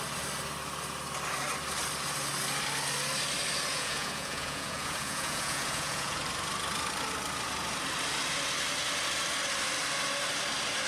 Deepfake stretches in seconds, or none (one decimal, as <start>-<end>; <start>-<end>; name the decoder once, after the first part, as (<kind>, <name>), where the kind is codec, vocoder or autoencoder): 3.7-6.2 (vocoder, Vocos)